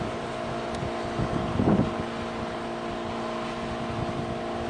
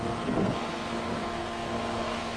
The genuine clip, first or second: first